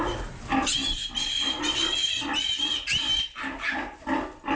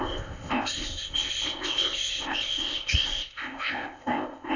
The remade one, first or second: second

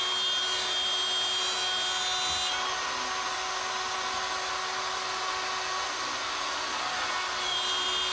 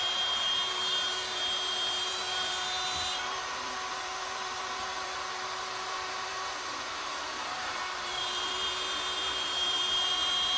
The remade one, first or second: second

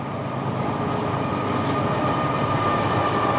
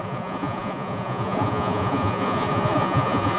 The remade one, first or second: second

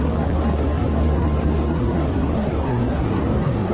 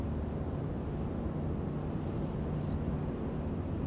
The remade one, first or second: first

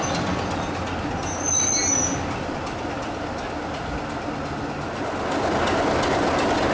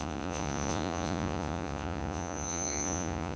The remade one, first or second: second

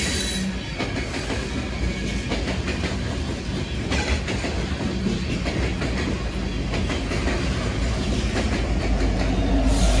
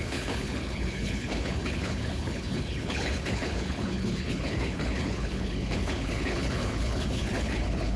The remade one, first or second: second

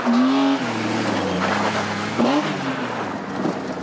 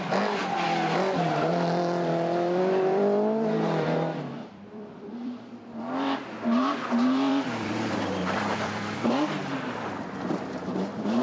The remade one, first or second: second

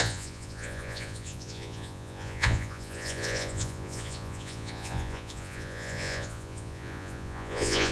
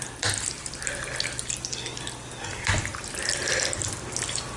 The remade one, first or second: first